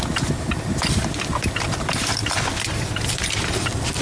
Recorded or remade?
remade